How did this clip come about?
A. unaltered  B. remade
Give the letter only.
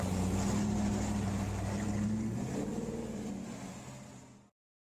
A